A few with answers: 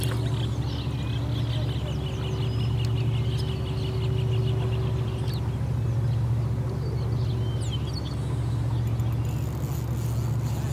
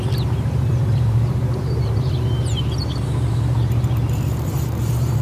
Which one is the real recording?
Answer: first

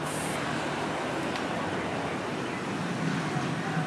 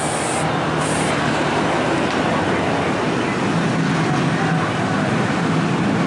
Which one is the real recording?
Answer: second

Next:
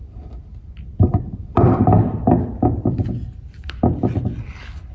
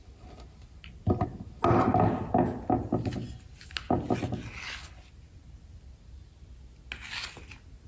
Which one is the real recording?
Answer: second